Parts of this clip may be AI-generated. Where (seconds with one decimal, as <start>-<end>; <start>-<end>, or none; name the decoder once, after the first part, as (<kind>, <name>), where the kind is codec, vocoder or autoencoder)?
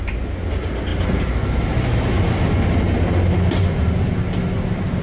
0.9-2.3 (vocoder, BigVGAN v2)